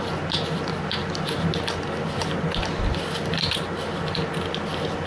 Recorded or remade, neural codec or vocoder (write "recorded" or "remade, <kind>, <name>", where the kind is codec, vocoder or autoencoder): recorded